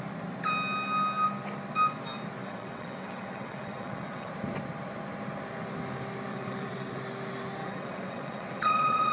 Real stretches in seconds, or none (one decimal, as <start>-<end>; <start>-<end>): 0.0-2.4; 4.3-6.3; 7.0-7.6

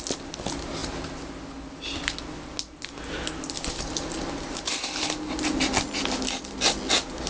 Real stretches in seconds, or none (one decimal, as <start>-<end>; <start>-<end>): 0.0-7.3

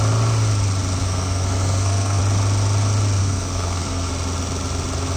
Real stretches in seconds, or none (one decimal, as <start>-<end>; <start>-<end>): 0.0-1.0; 2.2-3.2; 4.1-5.2